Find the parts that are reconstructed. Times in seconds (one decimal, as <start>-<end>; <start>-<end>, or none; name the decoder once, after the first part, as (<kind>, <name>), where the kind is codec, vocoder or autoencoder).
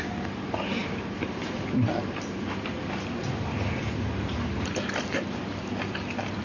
none